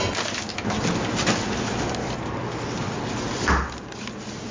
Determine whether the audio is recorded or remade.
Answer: recorded